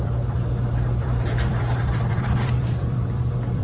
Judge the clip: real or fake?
fake